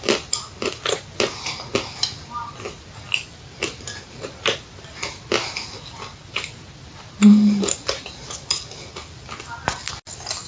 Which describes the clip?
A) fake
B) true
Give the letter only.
B